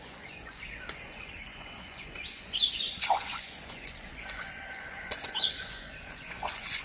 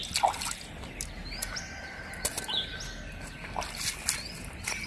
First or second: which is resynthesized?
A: first